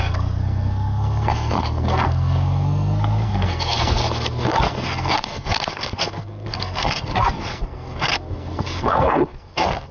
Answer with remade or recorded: remade